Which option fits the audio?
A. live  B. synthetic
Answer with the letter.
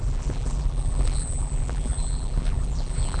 B